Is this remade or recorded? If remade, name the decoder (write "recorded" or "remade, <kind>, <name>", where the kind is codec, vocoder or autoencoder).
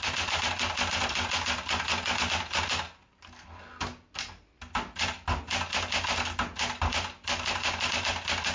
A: recorded